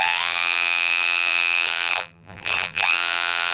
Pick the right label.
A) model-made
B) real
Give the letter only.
A